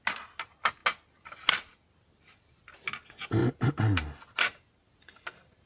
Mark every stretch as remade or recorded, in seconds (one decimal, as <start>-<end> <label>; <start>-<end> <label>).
0.0-3.4 recorded; 3.4-4.6 remade; 4.6-5.7 recorded